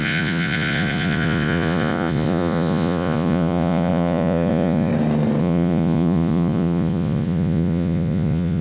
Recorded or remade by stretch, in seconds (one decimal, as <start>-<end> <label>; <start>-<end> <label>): 0.0-4.9 remade; 4.9-5.4 recorded; 5.4-8.6 remade